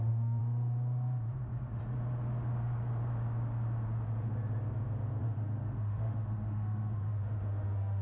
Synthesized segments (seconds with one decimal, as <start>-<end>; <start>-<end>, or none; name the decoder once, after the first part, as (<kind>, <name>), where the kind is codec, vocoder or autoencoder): 0.0-0.4 (autoencoder, DAC-VAE); 5.2-8.0